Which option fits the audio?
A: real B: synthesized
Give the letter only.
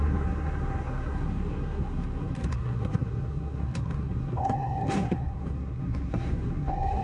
B